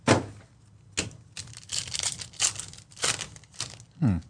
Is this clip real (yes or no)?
yes